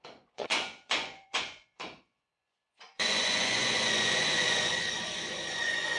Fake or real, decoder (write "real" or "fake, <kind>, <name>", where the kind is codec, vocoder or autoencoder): fake, vocoder, Vocos